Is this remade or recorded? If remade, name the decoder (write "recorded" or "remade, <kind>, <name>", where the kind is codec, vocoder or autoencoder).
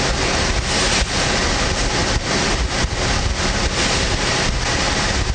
recorded